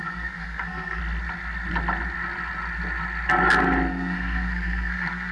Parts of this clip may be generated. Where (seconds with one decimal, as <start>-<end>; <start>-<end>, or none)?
0.0-1.0; 3.9-5.3